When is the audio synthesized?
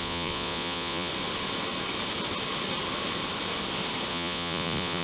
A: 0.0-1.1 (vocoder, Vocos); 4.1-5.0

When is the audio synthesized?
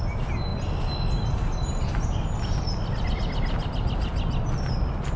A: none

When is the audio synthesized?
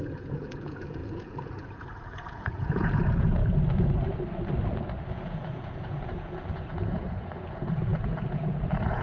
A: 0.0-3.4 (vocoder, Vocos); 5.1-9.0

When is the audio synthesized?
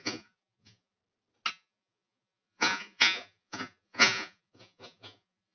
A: 0.0-1.0 (vocoder, Vocos); 1.5-5.5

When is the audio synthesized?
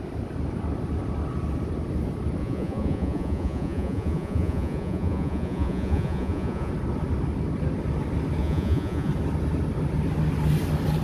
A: 2.4-6.7 (vocoder, Vocos); 8.4-9.1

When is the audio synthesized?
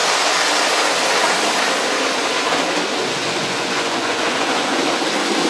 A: 3.0-4.8 (vocoder, Vocos)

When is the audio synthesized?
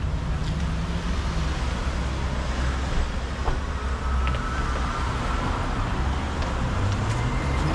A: none